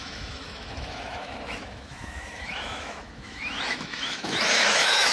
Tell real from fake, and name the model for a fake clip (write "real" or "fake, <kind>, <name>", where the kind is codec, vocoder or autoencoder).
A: fake, autoencoder, DAC-VAE